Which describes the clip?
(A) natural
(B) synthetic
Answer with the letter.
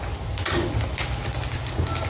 A